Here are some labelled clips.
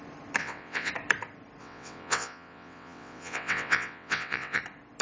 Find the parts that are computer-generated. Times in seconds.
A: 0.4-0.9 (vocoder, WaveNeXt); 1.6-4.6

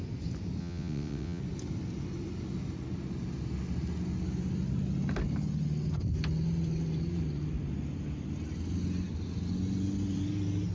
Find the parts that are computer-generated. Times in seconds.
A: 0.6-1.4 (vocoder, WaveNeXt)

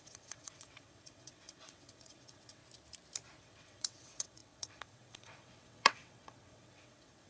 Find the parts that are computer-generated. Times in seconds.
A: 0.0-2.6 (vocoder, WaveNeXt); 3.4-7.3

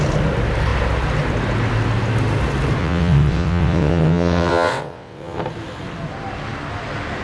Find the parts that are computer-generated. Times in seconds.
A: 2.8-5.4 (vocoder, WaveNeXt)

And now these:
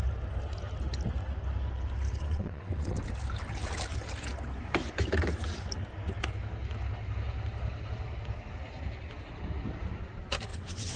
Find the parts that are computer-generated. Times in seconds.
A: 2.2-3.0 (vocoder, WaveNeXt); 10.5-11.0

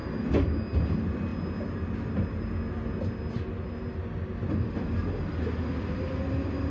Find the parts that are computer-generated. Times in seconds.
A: none

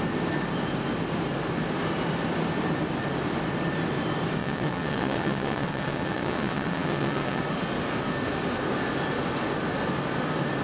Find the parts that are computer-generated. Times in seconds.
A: 4.4-7.4 (vocoder, WaveNeXt)

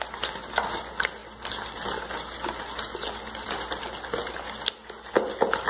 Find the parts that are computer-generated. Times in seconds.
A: none